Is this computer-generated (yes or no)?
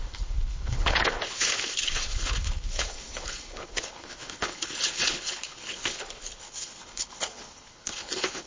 yes